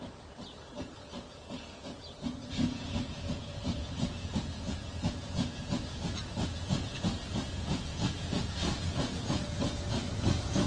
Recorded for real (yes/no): no